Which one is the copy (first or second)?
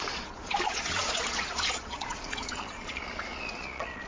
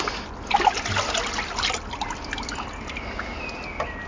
first